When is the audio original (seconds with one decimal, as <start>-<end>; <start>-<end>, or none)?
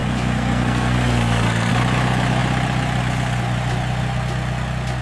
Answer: 1.7-5.0